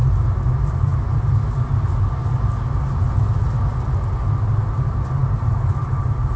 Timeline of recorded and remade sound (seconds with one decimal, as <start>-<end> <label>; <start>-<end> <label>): 0.0-0.5 recorded; 0.5-0.9 remade; 0.9-4.7 recorded; 4.7-6.4 remade